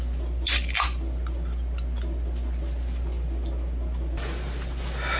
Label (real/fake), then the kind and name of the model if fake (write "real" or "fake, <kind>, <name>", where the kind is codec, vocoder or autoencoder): real